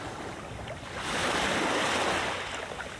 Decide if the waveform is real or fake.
real